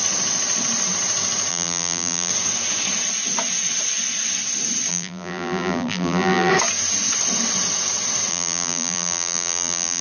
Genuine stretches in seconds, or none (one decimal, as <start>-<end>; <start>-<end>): 0.0-1.5; 2.3-4.9; 6.5-8.3